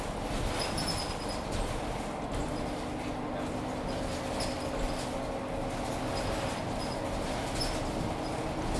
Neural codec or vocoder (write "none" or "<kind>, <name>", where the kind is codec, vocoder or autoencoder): none